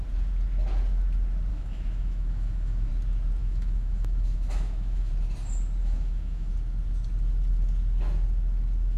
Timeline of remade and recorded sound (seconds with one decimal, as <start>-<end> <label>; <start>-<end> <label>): 0.0-1.5 recorded; 1.5-2.9 remade; 2.9-3.4 recorded; 3.4-5.1 remade; 5.1-5.8 recorded; 5.8-6.5 remade; 6.5-9.0 recorded